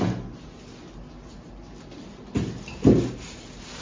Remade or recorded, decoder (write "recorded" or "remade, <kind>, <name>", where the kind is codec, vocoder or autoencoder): recorded